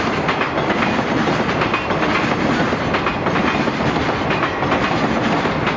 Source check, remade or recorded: recorded